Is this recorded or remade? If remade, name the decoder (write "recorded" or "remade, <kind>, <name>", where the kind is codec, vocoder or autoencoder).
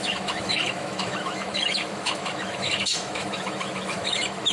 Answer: remade, autoencoder, DAC-VAE